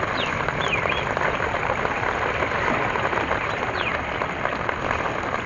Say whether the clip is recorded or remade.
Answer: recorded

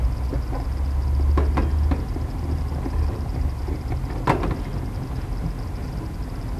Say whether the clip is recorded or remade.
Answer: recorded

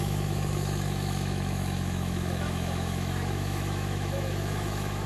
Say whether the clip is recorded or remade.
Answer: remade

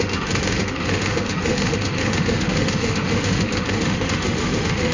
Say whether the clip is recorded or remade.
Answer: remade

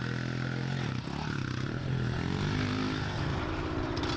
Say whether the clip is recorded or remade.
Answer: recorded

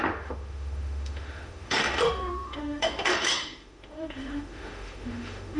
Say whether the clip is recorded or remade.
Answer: remade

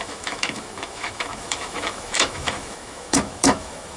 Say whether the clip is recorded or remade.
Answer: remade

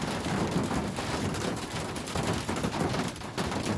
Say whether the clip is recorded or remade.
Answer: recorded